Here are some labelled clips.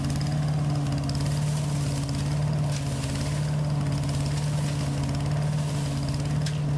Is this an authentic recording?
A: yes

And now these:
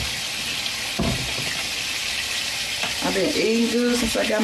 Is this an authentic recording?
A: yes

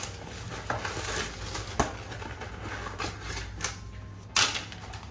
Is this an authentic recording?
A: yes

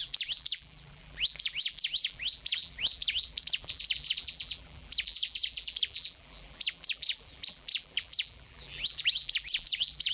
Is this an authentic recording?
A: no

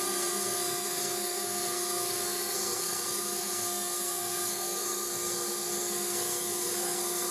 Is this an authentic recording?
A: no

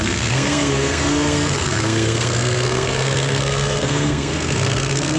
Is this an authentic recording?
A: no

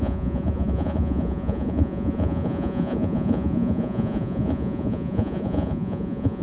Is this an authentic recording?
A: no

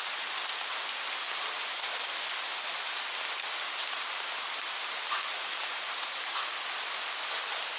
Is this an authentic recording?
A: yes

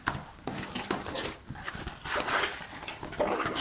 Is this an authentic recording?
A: yes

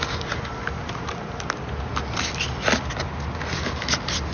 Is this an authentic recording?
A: yes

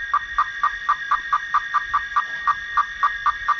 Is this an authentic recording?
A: yes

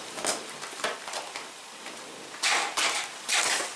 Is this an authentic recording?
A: yes